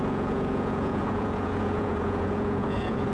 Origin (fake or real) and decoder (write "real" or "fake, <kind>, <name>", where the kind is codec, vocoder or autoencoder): fake, vocoder, Vocos